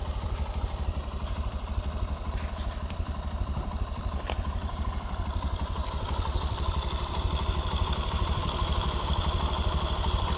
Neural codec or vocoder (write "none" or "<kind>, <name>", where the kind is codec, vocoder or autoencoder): vocoder, BigVGAN v2